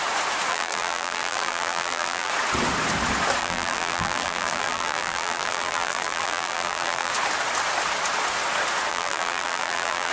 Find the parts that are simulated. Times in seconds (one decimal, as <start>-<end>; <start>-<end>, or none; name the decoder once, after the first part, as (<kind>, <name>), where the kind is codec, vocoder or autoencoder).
0.5-2.3 (vocoder, BigVGAN v2); 3.4-7.1; 8.9-10.1